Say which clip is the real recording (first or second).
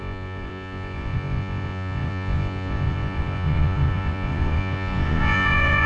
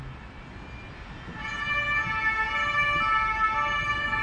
second